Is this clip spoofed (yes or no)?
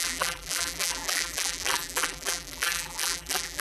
yes